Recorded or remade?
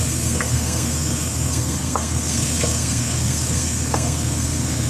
remade